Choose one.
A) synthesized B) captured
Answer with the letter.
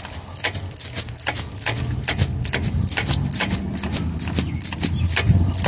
B